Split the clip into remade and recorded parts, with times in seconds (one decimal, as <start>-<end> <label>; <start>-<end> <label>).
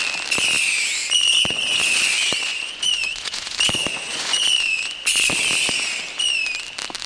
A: 0.0-1.0 recorded; 1.0-5.3 remade; 5.3-7.1 recorded